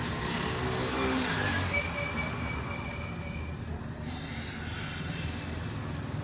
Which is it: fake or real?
real